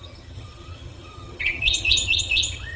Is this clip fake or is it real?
fake